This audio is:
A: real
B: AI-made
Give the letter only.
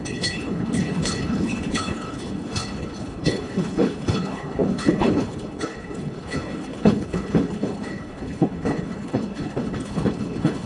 B